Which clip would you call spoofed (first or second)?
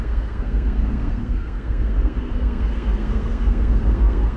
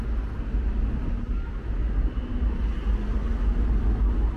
first